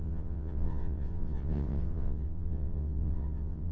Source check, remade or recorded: remade